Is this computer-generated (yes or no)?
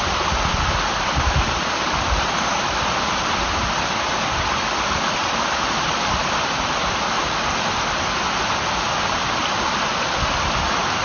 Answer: no